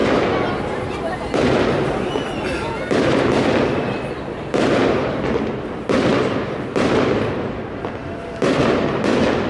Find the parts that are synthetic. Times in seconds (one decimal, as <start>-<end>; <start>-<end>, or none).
none